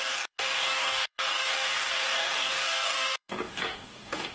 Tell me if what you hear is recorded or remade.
remade